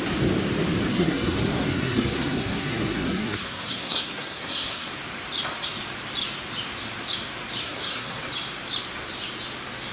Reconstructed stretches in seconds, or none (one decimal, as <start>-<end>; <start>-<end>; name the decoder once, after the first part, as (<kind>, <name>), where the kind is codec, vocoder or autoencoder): 0.9-4.9 (codec, SNAC); 7.6-8.2